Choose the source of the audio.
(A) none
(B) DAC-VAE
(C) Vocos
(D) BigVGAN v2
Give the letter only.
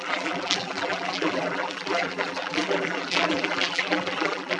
D